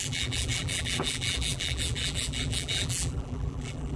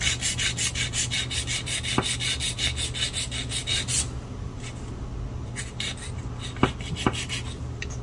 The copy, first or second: first